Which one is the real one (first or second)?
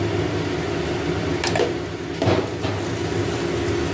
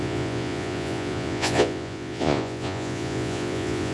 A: first